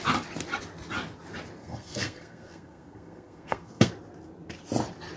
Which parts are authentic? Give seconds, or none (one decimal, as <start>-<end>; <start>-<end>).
0.0-1.6; 3.9-5.2